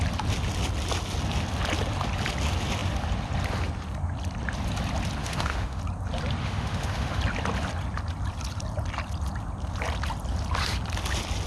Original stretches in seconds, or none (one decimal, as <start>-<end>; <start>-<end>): 0.0-5.2; 5.8-6.4; 7.2-11.5